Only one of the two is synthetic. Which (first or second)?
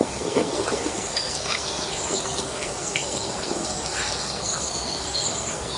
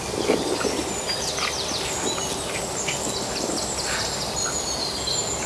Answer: first